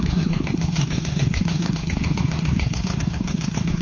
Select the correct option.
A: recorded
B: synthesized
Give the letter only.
B